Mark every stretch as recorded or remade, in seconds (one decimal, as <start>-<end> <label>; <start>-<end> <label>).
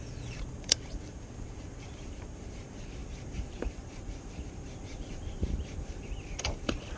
0.0-7.0 remade